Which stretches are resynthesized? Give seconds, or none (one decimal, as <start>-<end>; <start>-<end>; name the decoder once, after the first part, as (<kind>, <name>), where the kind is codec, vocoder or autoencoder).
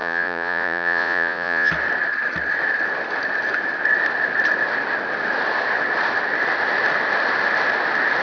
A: 0.0-1.7 (vocoder, Vocos)